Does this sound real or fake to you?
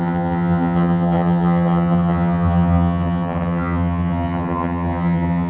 fake